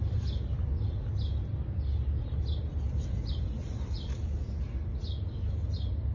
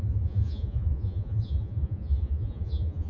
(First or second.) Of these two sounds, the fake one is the second